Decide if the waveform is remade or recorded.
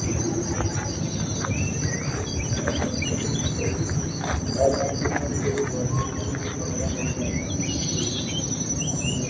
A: recorded